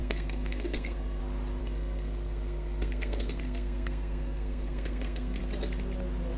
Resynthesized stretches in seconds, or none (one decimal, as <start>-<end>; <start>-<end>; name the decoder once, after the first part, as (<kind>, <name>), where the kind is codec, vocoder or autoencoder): 0.0-1.2 (codec, SNAC); 1.6-5.4